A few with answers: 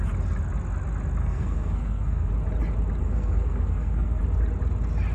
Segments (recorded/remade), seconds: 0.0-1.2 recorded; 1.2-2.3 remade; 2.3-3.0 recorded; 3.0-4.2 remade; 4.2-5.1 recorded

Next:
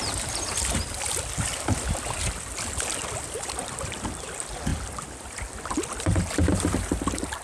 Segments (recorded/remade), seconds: 0.0-4.7 recorded; 4.7-6.3 remade; 6.3-7.4 recorded

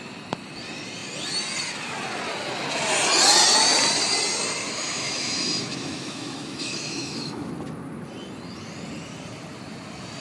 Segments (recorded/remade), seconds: 0.0-4.6 recorded; 4.6-7.5 remade; 7.5-10.2 recorded

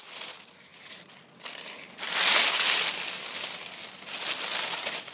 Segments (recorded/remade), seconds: 0.0-5.1 recorded

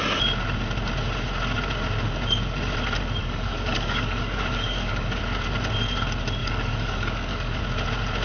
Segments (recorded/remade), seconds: 0.0-3.2 recorded; 3.2-5.2 remade; 5.2-6.4 recorded; 6.4-7.6 remade; 7.6-8.2 recorded

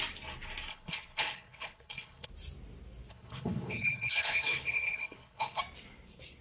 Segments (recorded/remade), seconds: 0.0-0.7 recorded; 0.7-2.3 remade; 2.3-3.1 recorded; 3.1-5.6 remade; 5.6-6.4 recorded